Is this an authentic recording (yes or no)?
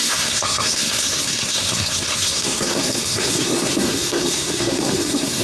no